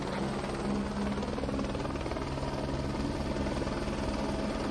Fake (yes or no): no